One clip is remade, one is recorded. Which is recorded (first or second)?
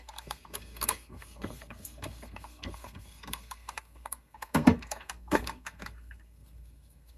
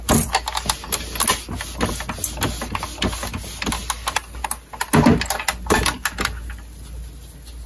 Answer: second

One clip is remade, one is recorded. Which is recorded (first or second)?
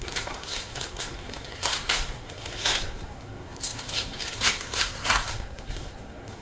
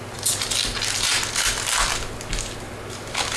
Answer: second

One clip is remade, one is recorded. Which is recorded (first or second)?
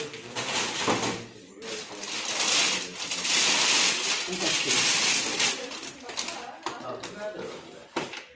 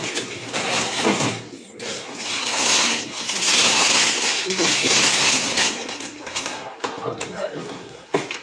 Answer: first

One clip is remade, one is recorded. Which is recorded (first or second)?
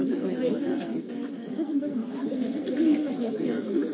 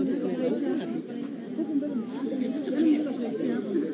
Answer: second